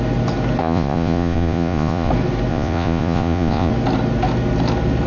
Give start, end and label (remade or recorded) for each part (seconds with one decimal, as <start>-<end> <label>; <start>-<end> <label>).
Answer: 0.0-0.6 recorded; 0.6-2.1 remade; 2.1-2.5 recorded; 2.5-3.7 remade; 3.7-5.1 recorded